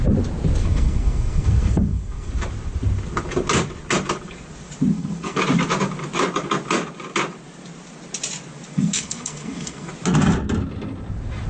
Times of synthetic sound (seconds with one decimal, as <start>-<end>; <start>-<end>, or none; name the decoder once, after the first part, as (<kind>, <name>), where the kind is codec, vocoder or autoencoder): 0.6-2.3 (codec, SNAC); 4.9-5.4; 8.7-9.9